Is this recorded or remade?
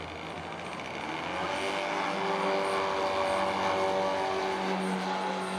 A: recorded